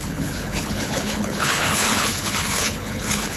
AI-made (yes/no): yes